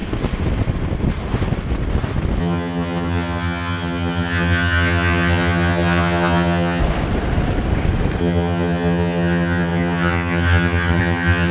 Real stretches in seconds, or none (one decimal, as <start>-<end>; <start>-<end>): 0.0-2.4; 6.8-8.2